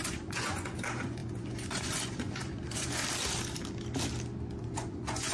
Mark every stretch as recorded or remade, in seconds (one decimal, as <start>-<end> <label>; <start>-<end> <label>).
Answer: 0.0-3.0 remade; 3.0-4.6 recorded; 4.6-5.3 remade